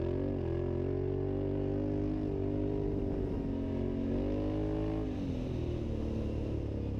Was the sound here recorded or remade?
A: recorded